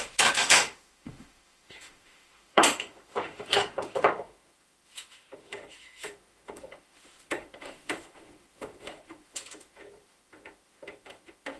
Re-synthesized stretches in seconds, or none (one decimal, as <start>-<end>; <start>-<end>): 0.0-11.6